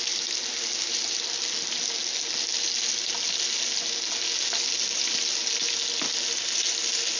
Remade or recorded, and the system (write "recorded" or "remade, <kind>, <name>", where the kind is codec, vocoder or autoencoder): recorded